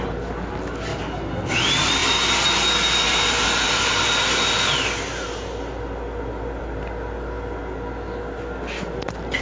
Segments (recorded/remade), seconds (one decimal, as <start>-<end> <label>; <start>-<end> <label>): 0.0-9.4 recorded